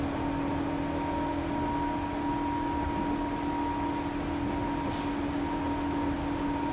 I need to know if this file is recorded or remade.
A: recorded